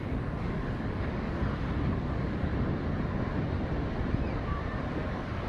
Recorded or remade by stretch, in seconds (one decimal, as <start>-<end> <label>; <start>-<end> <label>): 0.0-1.4 remade; 1.4-1.9 recorded; 1.9-2.5 remade; 2.5-4.9 recorded; 4.9-5.5 remade